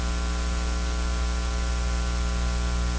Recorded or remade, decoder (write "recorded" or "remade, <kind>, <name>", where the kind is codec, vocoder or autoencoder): recorded